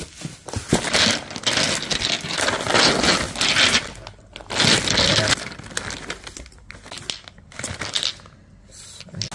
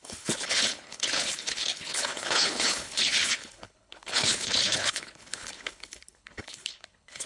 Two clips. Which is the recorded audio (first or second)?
first